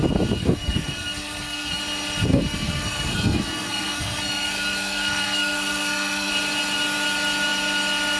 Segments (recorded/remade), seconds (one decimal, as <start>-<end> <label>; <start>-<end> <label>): 0.0-0.4 recorded; 0.4-1.8 remade; 1.8-2.3 recorded; 2.3-6.3 remade; 6.3-8.2 recorded